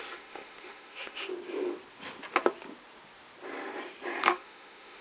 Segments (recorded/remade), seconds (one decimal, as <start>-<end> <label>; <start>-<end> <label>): 0.0-1.3 remade; 1.3-4.3 recorded; 4.3-5.0 remade